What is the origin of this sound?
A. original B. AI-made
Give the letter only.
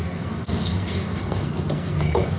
B